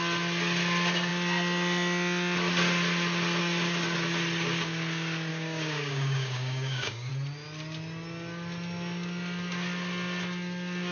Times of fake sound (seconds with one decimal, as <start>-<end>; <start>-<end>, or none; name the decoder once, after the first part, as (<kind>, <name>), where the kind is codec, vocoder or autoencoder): 5.3-7.1 (codec, DAC)